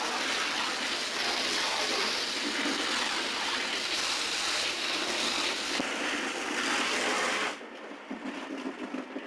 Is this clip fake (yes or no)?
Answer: no